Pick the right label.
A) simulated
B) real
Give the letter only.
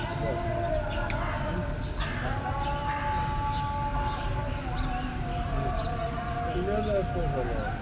B